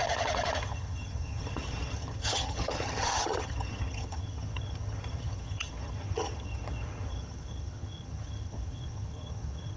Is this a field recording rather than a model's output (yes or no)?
no